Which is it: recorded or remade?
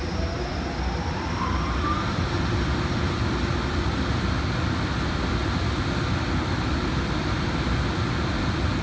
recorded